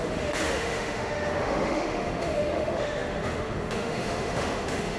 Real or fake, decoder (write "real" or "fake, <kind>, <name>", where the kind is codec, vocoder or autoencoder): fake, autoencoder, DAC-VAE